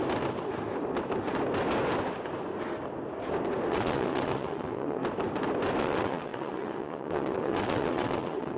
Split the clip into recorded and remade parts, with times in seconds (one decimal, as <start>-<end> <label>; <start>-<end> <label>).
0.0-3.7 recorded; 3.7-5.0 remade; 5.0-5.8 recorded; 5.8-8.6 remade